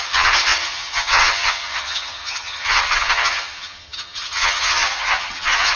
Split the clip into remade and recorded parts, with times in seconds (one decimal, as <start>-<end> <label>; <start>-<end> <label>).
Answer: 0.0-5.8 remade